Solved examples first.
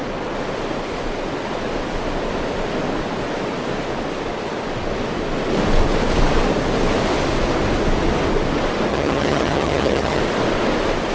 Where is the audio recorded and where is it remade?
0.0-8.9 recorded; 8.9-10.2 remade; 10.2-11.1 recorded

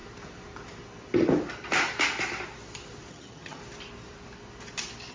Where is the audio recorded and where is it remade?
0.0-3.1 recorded; 3.1-3.6 remade; 3.6-5.1 recorded

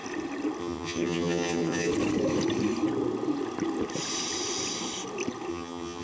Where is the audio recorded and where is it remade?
0.0-0.6 recorded; 0.6-1.9 remade; 1.9-5.5 recorded; 5.5-6.0 remade

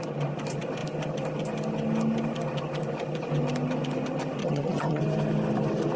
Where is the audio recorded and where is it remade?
0.0-4.4 recorded; 4.4-5.0 remade; 5.0-6.0 recorded

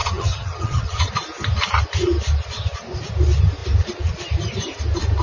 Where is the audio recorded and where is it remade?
0.0-1.1 remade; 1.1-5.2 recorded

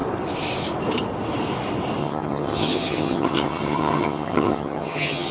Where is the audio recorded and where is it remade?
0.0-2.0 recorded; 2.0-5.3 remade

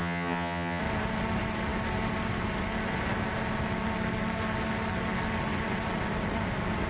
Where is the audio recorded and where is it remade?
0.0-0.8 remade; 0.8-6.9 recorded

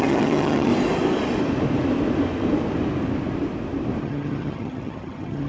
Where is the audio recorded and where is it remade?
0.0-0.7 remade; 0.7-4.0 recorded; 4.0-5.5 remade